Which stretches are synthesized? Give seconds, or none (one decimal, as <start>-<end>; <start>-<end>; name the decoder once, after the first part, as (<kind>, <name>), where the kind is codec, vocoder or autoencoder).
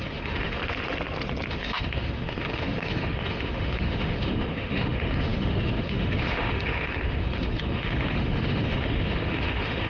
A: 0.0-0.6 (autoencoder, DAC-VAE); 1.5-9.9